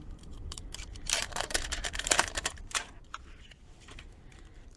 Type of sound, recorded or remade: remade